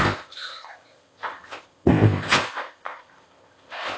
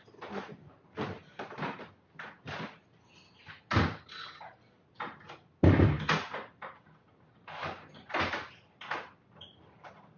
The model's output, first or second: first